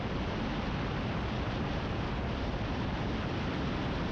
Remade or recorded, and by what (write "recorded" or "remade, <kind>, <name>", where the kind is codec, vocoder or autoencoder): recorded